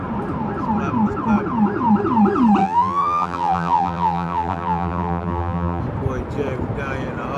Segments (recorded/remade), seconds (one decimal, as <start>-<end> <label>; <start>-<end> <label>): 0.0-2.6 recorded; 2.6-5.8 remade; 5.8-7.4 recorded